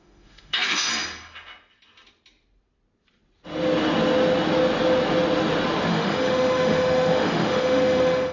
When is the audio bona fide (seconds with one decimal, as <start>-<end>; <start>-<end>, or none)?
0.9-5.9